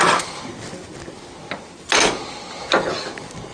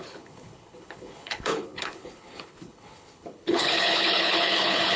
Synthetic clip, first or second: second